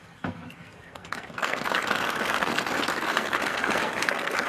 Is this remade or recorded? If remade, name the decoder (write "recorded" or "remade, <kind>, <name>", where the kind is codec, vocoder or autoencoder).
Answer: remade, codec, SNAC